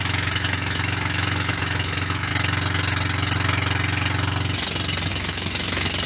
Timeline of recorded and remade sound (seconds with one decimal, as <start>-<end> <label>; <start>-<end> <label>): 0.0-2.3 remade; 2.3-5.1 recorded; 5.1-6.1 remade